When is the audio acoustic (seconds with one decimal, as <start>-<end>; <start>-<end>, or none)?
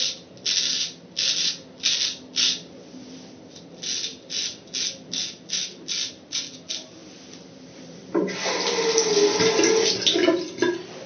0.0-11.1